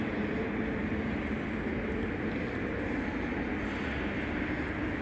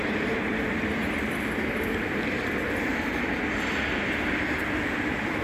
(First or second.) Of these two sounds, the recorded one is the first